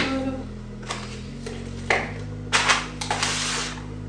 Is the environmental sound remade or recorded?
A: recorded